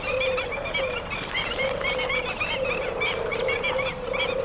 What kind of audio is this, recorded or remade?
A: remade